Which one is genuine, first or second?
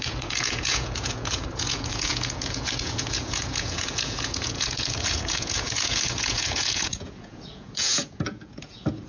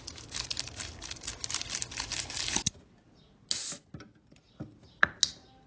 second